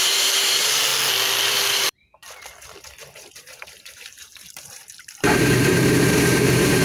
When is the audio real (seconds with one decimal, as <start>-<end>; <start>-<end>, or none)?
0.9-1.5